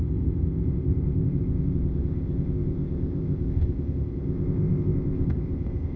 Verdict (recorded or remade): remade